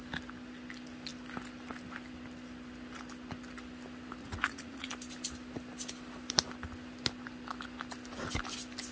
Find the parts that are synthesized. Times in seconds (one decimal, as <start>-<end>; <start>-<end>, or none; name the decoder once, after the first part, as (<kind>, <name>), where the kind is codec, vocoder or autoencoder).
4.2-4.9 (vocoder, Vocos)